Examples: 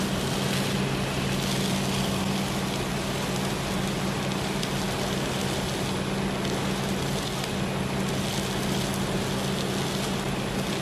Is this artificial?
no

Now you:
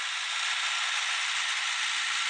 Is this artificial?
no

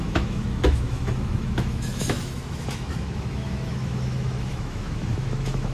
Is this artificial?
yes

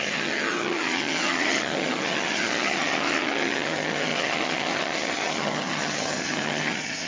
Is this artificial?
yes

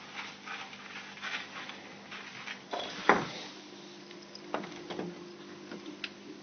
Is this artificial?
no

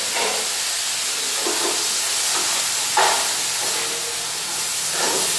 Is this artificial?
no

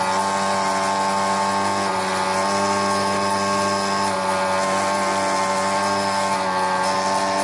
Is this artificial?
no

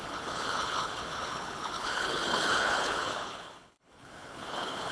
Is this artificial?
yes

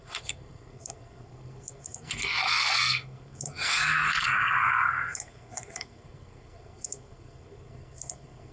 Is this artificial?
yes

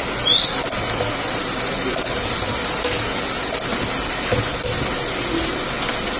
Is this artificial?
no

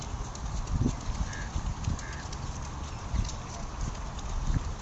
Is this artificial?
no